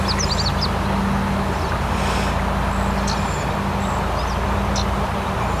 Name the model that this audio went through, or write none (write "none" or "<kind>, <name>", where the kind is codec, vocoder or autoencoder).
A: none